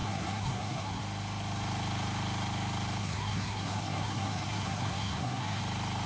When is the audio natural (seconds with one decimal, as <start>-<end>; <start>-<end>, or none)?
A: 1.0-3.0; 5.6-6.1